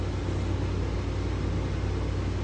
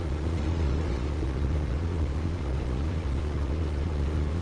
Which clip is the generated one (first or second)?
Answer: second